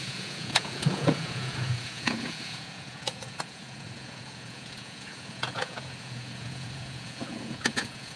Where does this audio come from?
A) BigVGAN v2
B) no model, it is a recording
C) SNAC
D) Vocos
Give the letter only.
D